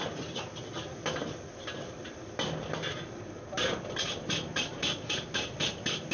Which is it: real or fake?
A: real